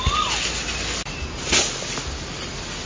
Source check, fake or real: real